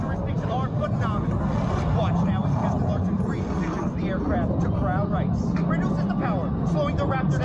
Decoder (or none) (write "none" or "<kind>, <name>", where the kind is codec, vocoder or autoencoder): none